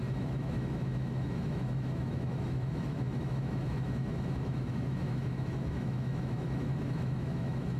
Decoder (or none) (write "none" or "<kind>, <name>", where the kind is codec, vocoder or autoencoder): autoencoder, DAC-VAE